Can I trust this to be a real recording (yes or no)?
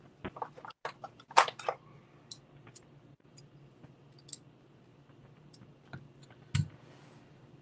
yes